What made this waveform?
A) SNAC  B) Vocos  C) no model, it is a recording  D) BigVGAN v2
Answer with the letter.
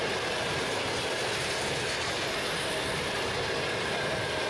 C